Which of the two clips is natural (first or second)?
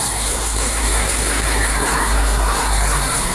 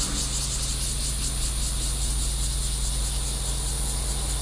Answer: second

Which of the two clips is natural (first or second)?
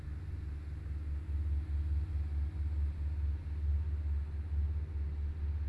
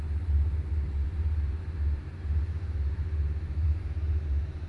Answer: first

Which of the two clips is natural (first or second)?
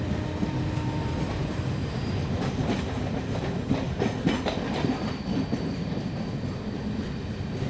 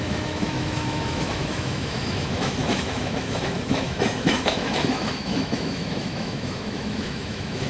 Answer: first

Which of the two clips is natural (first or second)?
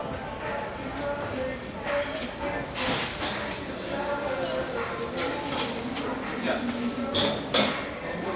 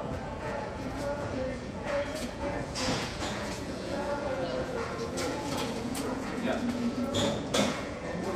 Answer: first